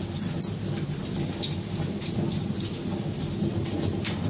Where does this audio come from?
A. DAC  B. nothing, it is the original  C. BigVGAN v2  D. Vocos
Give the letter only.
B